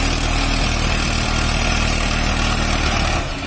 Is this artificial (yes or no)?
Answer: no